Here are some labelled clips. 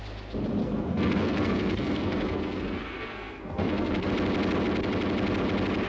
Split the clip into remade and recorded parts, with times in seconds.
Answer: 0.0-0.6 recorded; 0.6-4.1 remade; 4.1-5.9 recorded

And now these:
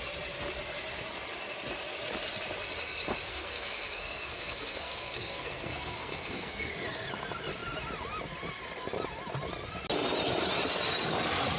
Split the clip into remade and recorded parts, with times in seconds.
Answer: 0.0-3.3 recorded; 3.3-6.7 remade; 6.7-11.6 recorded

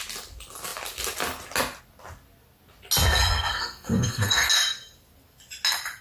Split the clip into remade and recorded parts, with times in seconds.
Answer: 0.0-3.2 recorded; 3.2-4.5 remade; 4.5-6.0 recorded

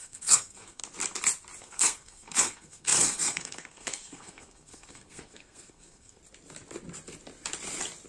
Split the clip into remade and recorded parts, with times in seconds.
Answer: 0.0-0.8 remade; 0.8-1.6 recorded; 1.6-6.2 remade; 6.2-8.1 recorded

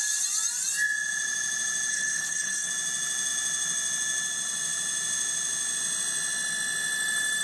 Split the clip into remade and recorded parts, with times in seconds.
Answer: 0.0-1.9 recorded; 1.9-2.7 remade; 2.7-7.4 recorded

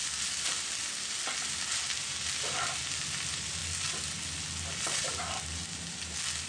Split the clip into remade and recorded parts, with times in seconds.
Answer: 0.0-6.5 recorded